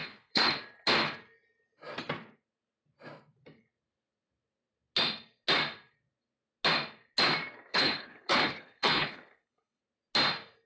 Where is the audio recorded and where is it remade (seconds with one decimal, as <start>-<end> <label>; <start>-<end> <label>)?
0.0-0.6 remade; 0.6-7.7 recorded; 7.7-9.8 remade; 9.8-10.7 recorded